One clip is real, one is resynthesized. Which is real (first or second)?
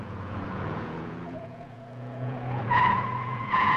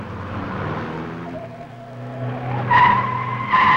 second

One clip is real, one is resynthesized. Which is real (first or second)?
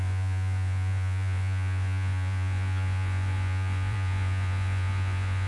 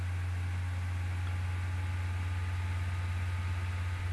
second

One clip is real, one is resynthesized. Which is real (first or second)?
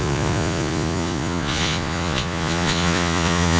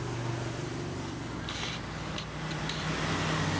second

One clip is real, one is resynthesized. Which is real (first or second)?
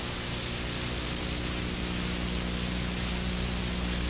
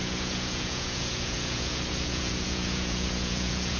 first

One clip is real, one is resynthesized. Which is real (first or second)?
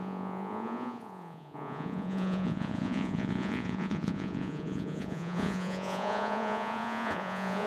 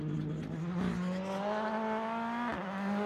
second